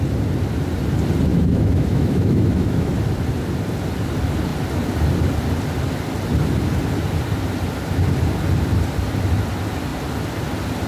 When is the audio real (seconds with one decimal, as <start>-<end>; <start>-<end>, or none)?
0.0-1.3; 2.9-10.9